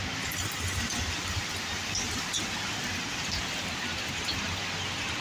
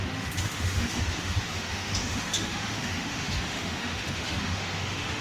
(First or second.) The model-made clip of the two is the second